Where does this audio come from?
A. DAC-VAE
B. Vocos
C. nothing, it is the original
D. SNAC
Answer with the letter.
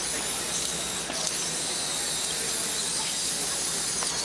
C